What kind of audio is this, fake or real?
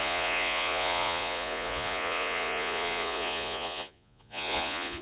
fake